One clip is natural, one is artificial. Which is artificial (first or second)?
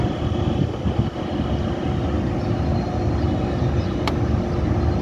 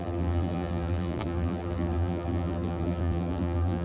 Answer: second